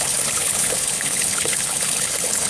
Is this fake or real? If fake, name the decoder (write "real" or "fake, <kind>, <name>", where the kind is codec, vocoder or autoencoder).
fake, codec, HILCodec